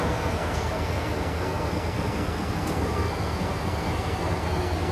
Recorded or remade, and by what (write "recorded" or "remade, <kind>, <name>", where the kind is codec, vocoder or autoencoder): remade, codec, SNAC